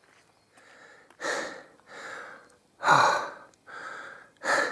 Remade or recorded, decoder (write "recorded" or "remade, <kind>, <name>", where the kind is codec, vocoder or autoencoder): recorded